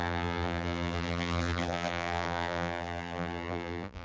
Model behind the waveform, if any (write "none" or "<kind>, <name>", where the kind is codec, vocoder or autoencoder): vocoder, BigVGAN v2